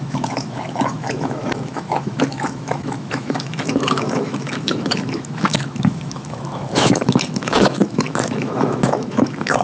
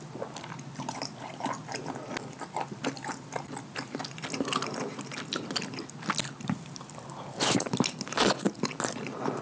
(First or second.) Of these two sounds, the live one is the second